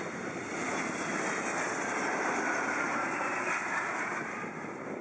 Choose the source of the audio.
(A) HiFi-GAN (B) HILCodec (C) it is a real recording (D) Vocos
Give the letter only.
C